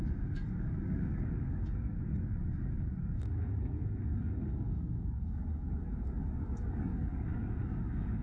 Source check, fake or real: fake